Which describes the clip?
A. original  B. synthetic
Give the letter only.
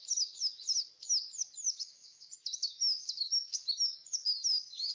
B